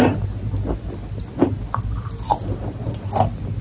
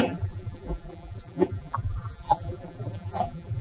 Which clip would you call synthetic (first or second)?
second